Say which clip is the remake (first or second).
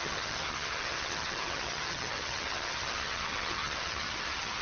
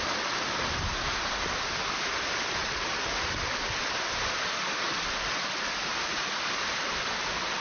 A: first